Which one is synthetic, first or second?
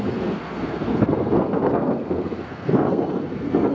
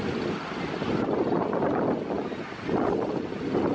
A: first